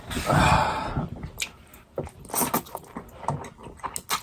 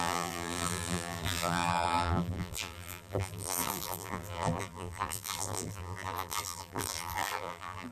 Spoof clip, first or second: second